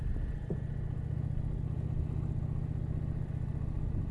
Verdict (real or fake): real